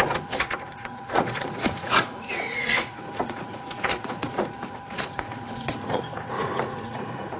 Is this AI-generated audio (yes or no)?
yes